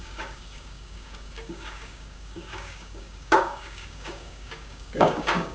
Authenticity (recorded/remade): remade